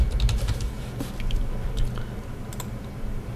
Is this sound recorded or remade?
recorded